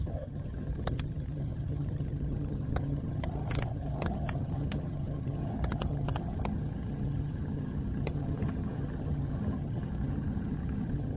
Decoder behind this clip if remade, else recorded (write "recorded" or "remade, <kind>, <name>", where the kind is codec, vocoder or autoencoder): remade, vocoder, HiFi-GAN